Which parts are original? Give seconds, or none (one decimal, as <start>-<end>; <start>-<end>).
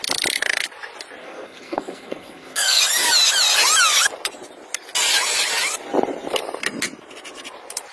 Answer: 0.0-1.2; 2.8-7.9